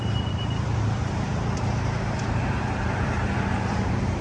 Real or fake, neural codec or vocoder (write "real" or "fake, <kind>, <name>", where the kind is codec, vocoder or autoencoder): fake, vocoder, BigVGAN v2